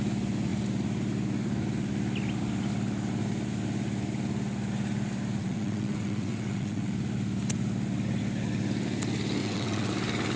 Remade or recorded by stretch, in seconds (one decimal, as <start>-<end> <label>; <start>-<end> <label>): 0.0-5.4 recorded; 5.4-6.9 remade; 6.9-9.4 recorded; 9.4-9.9 remade; 9.9-10.4 recorded